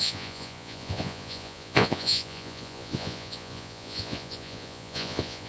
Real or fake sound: fake